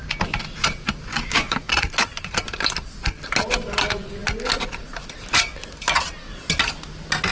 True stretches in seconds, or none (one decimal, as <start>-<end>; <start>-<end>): 0.0-1.1; 1.7-7.3